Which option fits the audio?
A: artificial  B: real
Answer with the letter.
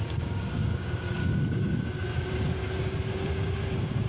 A